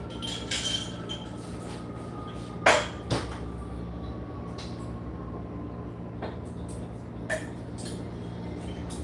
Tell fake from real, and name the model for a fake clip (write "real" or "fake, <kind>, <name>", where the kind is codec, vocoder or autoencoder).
real